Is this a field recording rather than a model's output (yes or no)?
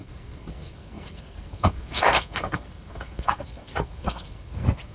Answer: no